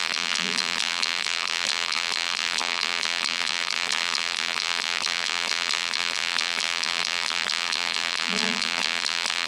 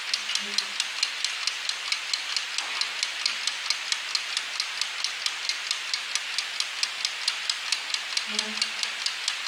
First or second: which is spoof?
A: first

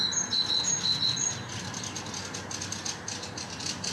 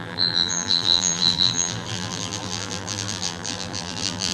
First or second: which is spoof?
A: second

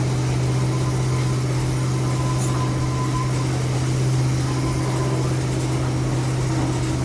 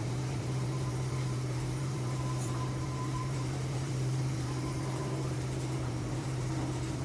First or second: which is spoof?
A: second